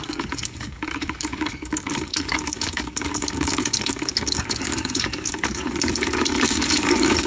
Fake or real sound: fake